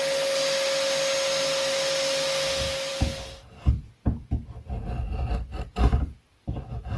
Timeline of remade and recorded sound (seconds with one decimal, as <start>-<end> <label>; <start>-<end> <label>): 0.0-7.0 recorded